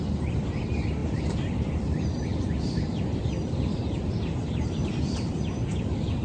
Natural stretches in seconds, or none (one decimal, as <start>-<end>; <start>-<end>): 0.0-1.0; 1.7-6.2